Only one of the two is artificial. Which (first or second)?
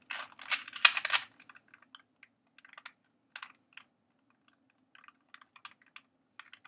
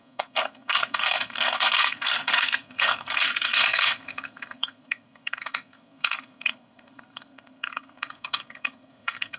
second